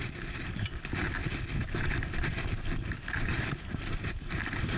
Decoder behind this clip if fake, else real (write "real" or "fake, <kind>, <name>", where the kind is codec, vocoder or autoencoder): real